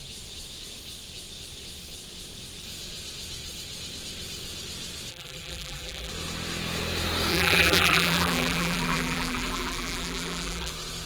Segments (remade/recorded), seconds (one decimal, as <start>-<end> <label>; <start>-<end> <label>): 0.0-5.1 recorded; 5.1-6.1 remade; 6.1-7.3 recorded; 7.3-10.7 remade; 10.7-11.1 recorded

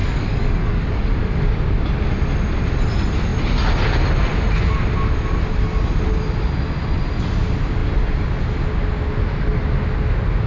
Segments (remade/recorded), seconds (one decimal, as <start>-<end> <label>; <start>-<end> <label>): 0.0-1.5 remade; 1.5-10.5 recorded